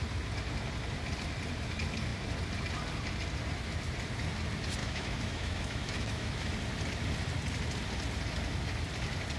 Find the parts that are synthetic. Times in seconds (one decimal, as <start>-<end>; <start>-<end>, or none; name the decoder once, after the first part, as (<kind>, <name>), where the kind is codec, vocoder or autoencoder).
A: 4.8-6.5 (autoencoder, DAC-VAE)